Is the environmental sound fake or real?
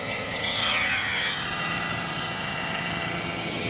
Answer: fake